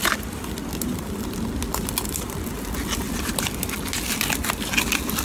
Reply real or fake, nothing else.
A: real